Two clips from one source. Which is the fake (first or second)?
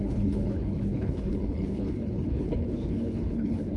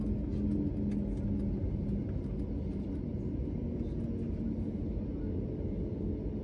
first